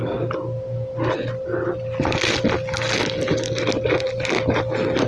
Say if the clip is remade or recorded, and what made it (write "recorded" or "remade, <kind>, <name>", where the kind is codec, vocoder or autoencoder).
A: recorded